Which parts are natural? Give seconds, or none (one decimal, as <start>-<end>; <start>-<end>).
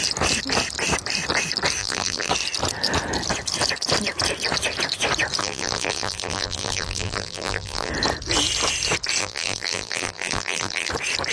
0.0-1.8; 2.3-5.4; 7.9-9.2; 10.9-11.3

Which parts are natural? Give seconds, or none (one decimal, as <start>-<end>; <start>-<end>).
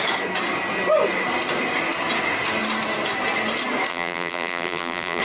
0.0-3.9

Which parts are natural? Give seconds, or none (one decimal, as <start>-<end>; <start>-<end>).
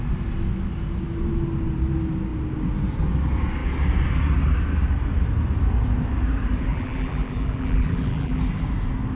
0.0-6.7; 8.4-9.2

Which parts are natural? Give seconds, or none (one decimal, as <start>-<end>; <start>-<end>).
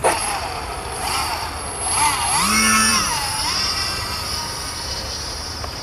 1.5-2.9